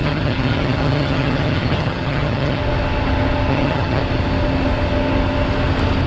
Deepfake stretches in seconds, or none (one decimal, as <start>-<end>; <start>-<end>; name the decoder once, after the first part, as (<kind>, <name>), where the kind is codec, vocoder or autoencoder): 0.0-2.6 (vocoder, HiFi-GAN); 3.5-4.0